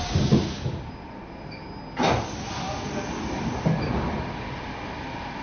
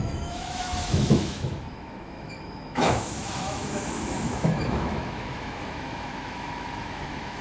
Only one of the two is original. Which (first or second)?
first